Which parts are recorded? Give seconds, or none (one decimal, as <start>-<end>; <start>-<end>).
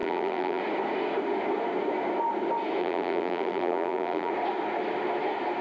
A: 0.6-2.8; 4.3-5.6